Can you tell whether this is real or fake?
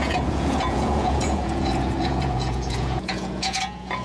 fake